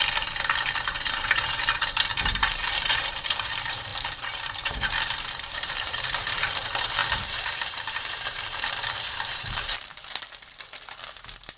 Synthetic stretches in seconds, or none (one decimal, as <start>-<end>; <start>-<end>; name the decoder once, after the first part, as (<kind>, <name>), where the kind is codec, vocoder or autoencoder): 0.0-10.0 (vocoder, BigVGAN v2)